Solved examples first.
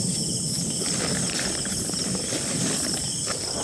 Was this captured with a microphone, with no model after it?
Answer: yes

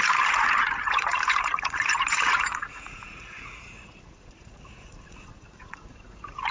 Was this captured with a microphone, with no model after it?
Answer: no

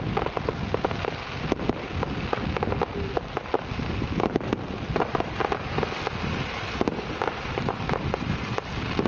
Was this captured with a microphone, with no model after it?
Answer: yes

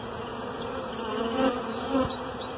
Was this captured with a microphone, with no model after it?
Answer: no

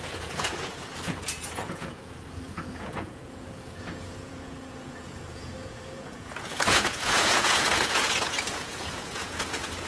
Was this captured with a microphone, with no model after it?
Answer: no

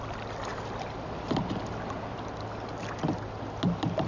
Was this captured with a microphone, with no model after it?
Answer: yes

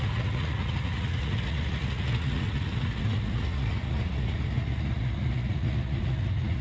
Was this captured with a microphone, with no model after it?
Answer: no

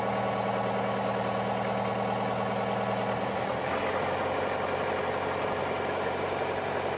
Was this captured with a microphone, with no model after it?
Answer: yes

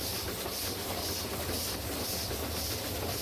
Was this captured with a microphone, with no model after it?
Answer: yes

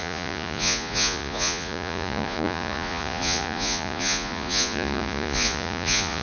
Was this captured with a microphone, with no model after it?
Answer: no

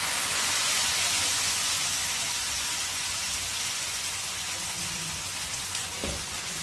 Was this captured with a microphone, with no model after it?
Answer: no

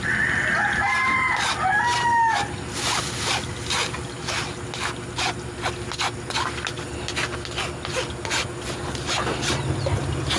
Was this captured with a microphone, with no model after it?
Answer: yes